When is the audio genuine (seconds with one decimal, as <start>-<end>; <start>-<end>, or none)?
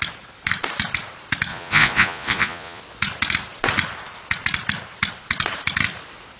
0.0-1.5; 2.8-6.4